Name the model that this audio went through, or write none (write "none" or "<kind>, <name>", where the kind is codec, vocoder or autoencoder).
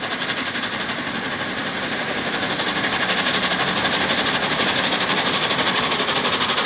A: none